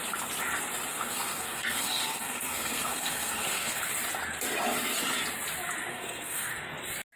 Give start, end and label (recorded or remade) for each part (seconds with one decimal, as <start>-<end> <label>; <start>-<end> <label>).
0.0-0.9 recorded; 0.9-3.8 remade; 3.8-5.9 recorded; 5.9-6.5 remade; 6.5-7.2 recorded